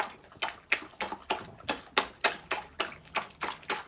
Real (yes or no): yes